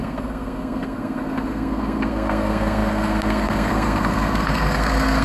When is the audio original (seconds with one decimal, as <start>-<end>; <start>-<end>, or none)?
none